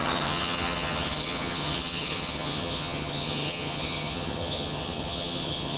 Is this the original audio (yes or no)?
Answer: no